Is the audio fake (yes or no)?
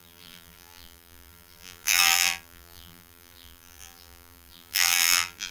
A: yes